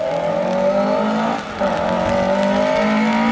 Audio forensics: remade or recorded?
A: recorded